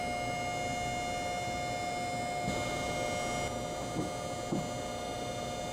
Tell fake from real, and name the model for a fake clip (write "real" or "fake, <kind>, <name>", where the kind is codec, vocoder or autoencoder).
real